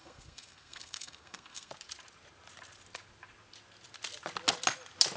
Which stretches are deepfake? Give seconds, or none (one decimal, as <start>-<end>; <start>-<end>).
0.0-1.7